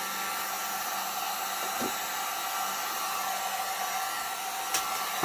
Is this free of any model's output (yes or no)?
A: yes